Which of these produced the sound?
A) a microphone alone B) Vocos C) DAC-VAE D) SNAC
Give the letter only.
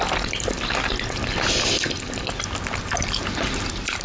A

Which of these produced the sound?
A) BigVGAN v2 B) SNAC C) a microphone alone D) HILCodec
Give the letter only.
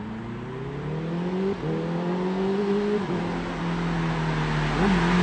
C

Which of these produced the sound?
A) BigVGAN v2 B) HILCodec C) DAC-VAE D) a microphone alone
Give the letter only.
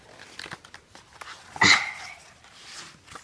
D